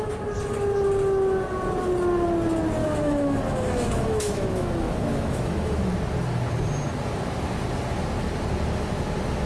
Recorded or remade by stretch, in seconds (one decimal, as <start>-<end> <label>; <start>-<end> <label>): 0.0-2.8 recorded; 2.8-5.9 remade; 5.9-9.5 recorded